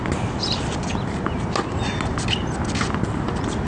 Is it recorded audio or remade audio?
recorded